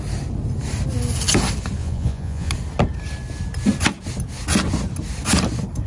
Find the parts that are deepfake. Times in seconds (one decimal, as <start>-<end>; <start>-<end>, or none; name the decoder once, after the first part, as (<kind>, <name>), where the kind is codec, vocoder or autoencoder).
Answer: 1.8-2.5 (vocoder, Vocos)